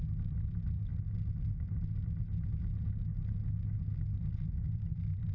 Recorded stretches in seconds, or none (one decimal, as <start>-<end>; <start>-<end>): 0.0-5.3